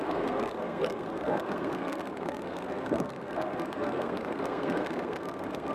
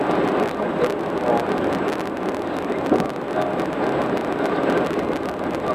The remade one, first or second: first